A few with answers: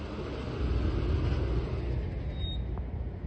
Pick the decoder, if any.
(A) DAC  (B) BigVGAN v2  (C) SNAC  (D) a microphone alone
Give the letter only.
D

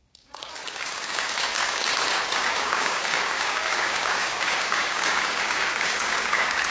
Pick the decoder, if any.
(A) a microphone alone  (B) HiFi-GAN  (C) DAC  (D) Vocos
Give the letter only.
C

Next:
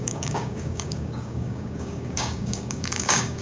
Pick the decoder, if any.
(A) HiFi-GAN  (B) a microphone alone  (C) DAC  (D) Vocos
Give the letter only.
C